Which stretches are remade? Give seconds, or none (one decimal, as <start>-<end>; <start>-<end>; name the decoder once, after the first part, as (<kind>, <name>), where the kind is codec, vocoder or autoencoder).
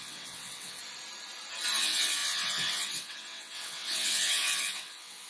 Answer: 0.0-0.8 (vocoder, WaveNeXt); 1.8-5.3